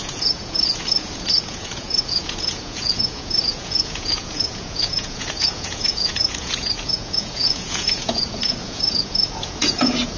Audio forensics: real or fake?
fake